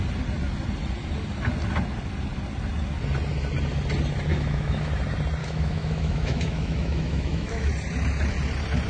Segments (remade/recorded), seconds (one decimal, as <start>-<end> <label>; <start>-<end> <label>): 0.0-4.3 recorded; 4.3-4.9 remade; 4.9-5.4 recorded; 5.4-7.7 remade; 7.7-8.9 recorded